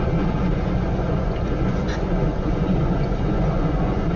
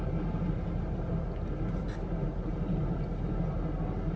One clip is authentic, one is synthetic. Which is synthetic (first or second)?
first